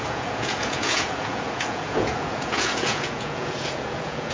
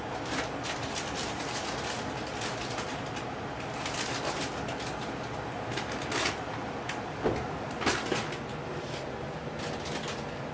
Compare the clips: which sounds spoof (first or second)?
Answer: first